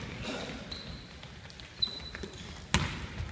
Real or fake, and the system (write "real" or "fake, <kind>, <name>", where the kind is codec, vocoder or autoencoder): real